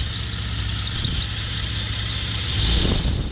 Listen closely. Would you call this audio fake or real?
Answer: real